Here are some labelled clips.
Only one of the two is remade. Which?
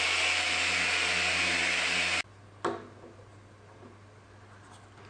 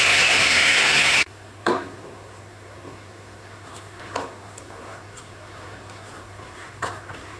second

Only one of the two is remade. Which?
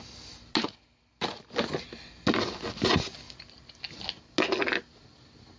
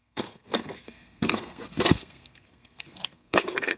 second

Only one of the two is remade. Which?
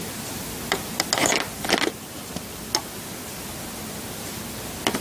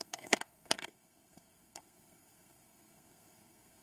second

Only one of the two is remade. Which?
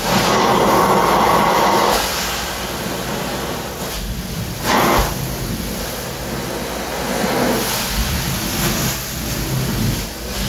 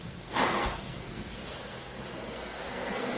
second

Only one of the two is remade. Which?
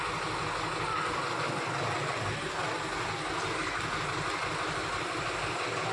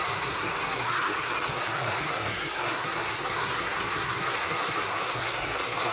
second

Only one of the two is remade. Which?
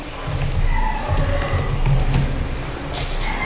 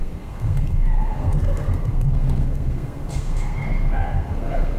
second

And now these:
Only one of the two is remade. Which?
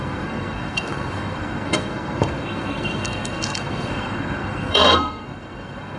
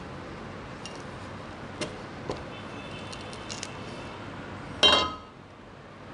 first